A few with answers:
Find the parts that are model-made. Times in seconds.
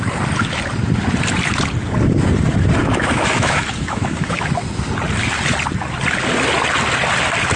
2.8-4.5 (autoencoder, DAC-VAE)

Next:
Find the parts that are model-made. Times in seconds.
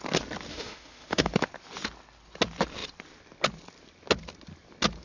0.5-1.3 (autoencoder, DAC-VAE)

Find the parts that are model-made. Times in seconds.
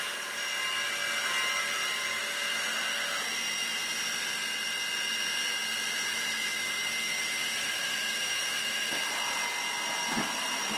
6.1-9.0 (autoencoder, DAC-VAE)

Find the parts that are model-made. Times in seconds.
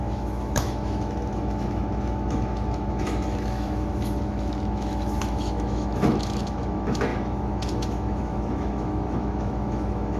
0.0-10.2 (autoencoder, DAC-VAE)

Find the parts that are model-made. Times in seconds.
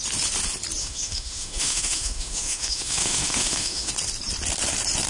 0.8-3.9 (autoencoder, DAC-VAE)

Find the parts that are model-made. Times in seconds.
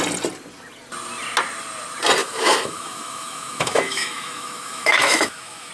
2.2-5.7 (autoencoder, DAC-VAE)